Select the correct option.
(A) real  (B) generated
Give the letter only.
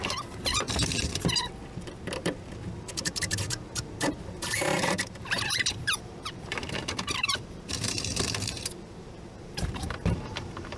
B